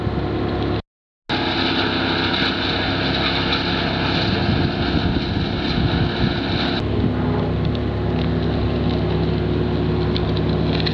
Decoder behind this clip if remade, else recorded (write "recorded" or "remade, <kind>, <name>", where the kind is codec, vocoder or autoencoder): recorded